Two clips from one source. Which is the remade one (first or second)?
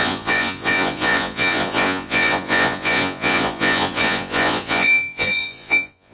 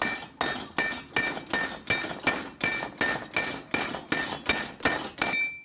first